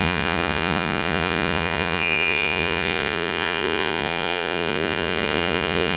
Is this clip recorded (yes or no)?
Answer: no